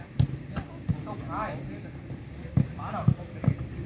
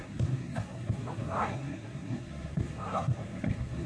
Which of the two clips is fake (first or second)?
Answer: second